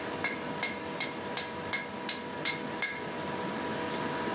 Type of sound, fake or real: real